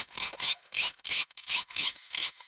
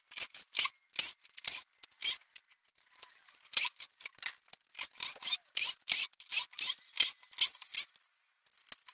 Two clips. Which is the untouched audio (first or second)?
second